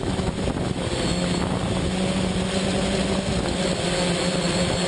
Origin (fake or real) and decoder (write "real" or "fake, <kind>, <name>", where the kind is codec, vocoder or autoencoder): real